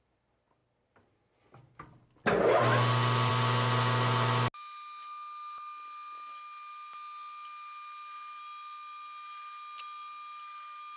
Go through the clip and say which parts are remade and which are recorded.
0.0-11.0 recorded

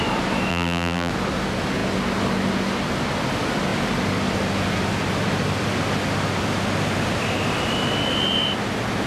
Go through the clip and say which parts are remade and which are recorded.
0.0-0.5 recorded; 0.5-1.1 remade; 1.1-9.1 recorded

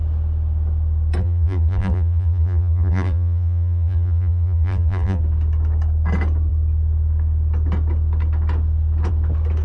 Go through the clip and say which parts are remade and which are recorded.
0.0-1.2 recorded; 1.2-5.2 remade; 5.2-9.6 recorded

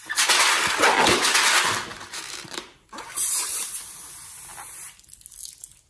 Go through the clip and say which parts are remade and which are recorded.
0.0-1.9 recorded; 1.9-3.6 remade; 3.6-5.9 recorded

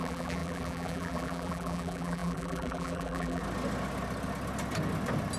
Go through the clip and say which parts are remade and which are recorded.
0.0-3.4 remade; 3.4-5.4 recorded